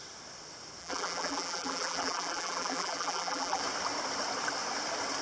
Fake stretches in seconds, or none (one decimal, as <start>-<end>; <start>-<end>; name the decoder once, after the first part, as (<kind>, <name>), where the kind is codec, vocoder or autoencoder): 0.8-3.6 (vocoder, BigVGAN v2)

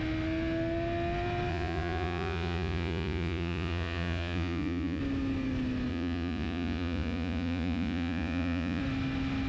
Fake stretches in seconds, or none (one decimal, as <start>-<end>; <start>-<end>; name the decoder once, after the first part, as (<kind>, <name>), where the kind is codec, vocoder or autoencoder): 1.5-5.0 (vocoder, Vocos); 5.9-8.8

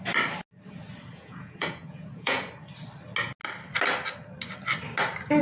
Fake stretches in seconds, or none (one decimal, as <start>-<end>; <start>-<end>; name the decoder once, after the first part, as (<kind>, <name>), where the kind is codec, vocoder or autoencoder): 1.1-2.5 (vocoder, Vocos)